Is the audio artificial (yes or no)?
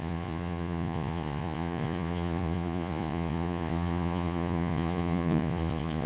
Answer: yes